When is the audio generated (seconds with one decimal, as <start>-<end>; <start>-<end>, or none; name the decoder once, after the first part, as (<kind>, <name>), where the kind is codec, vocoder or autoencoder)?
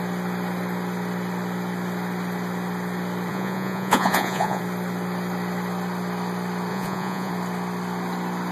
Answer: 3.3-4.6 (vocoder, Vocos); 6.7-7.3